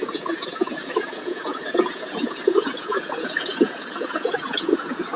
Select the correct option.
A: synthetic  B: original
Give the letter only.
A